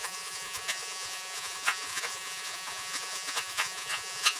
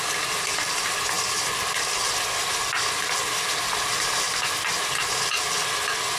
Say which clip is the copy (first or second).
first